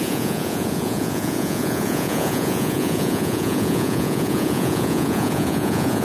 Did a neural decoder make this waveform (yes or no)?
yes